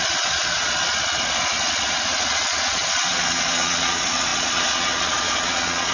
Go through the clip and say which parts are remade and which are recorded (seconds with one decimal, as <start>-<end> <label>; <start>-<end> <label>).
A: 0.0-5.9 remade

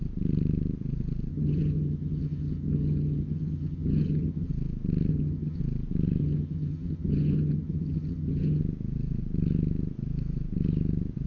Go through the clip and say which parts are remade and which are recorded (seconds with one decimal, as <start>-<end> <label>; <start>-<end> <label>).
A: 0.0-1.3 recorded; 1.3-4.5 remade; 4.5-5.1 recorded; 5.1-5.6 remade; 5.6-6.2 recorded; 6.2-8.6 remade; 8.6-11.3 recorded

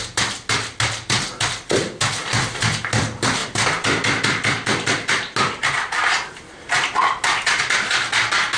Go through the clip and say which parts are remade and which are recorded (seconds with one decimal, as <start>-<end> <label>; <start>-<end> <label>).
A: 0.0-8.6 recorded

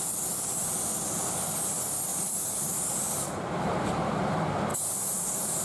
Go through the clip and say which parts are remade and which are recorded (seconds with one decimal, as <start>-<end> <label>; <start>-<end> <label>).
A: 0.0-2.1 recorded; 2.1-4.2 remade; 4.2-4.7 recorded; 4.7-5.6 remade

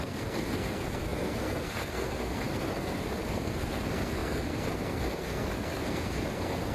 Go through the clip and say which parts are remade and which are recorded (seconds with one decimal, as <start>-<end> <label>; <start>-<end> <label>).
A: 0.0-6.7 remade

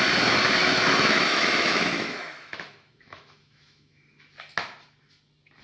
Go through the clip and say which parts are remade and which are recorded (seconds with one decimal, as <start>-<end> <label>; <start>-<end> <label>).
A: 0.0-0.6 recorded; 0.6-4.0 remade; 4.0-5.6 recorded

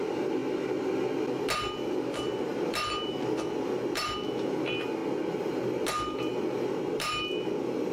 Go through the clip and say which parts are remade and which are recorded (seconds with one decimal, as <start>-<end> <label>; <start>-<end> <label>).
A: 0.0-0.4 remade; 0.4-2.1 recorded; 2.1-5.0 remade; 5.0-6.2 recorded; 6.2-7.9 remade